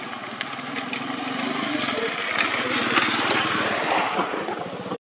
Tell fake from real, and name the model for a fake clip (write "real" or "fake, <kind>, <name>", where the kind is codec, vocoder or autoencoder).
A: real